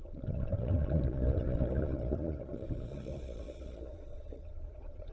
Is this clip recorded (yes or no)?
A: no